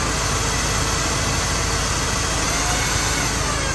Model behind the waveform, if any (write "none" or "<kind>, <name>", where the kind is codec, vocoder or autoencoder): none